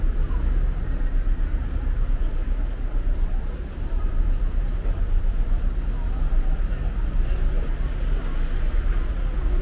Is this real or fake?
real